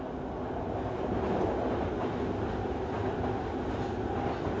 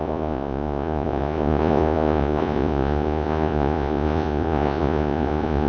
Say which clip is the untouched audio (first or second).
first